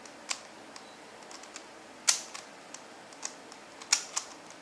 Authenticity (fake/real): real